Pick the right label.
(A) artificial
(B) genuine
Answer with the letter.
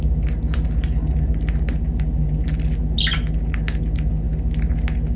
B